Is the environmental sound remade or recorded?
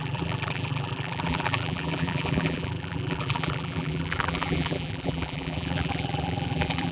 remade